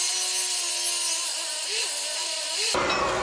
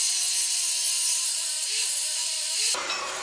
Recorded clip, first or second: first